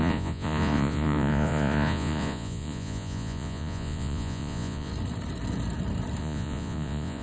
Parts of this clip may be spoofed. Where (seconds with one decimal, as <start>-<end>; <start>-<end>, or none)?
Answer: 0.0-4.9; 6.2-7.2